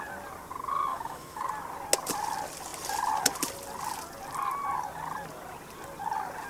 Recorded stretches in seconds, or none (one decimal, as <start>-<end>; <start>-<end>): 0.0-0.9; 1.4-6.5